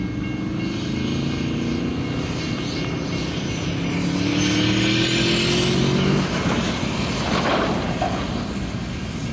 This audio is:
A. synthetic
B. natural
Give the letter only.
B